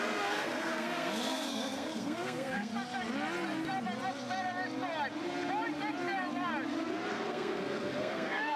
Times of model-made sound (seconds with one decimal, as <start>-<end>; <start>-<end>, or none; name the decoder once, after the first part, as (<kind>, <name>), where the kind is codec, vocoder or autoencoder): 0.0-2.7 (codec, SNAC); 7.1-8.6